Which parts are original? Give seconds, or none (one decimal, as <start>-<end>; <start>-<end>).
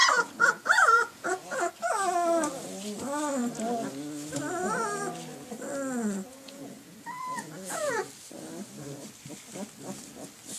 1.7-6.3; 8.0-10.6